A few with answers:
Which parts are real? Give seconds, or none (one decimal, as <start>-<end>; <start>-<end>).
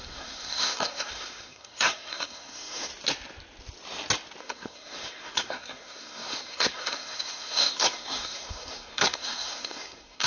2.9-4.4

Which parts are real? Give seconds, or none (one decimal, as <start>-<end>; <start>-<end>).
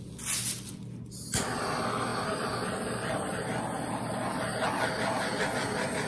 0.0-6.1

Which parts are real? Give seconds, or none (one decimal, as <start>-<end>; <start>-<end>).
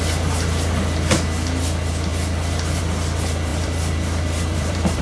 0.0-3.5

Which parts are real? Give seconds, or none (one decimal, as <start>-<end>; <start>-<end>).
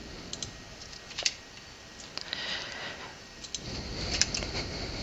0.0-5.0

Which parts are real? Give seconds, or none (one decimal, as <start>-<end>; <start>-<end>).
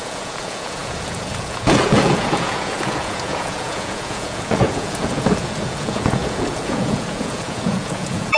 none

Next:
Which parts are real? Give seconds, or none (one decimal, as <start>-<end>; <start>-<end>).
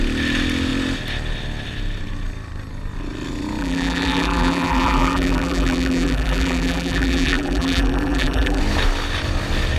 0.0-3.6; 8.6-9.8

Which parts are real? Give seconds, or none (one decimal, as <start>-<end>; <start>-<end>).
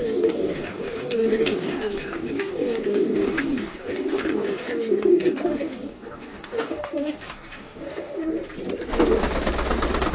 8.3-10.1